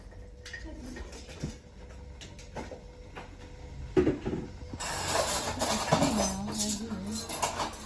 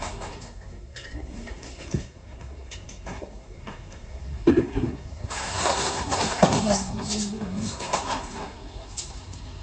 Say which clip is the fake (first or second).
second